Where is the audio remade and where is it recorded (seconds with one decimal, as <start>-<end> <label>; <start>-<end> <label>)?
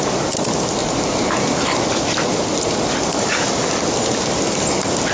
0.0-5.1 recorded